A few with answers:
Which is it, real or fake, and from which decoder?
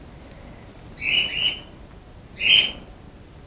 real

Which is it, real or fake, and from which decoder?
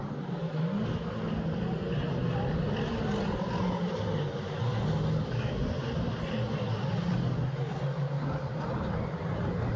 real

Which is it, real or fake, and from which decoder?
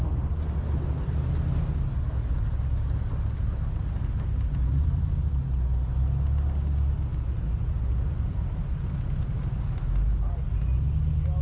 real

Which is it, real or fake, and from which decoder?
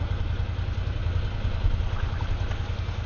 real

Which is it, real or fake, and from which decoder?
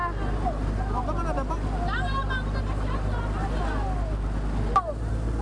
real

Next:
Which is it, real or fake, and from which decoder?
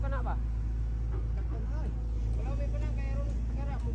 real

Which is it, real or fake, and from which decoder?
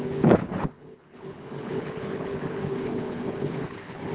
fake, codec, HILCodec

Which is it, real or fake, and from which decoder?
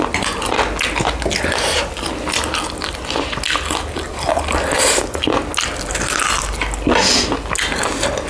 real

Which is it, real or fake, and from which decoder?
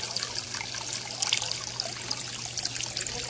real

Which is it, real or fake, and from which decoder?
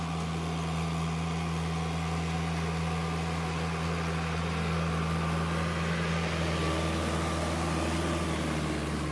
real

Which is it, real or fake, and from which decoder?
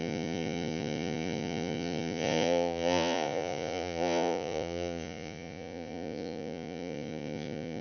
fake, vocoder, Vocos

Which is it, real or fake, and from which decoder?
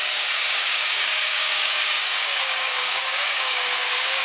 fake, codec, DAC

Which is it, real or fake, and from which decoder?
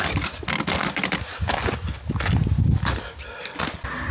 real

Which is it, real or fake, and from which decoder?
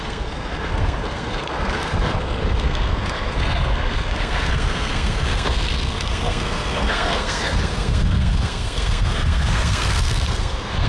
fake, codec, SNAC